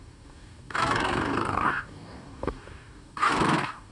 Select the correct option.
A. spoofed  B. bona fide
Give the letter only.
A